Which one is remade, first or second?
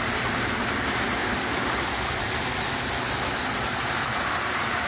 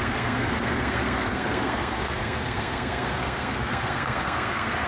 second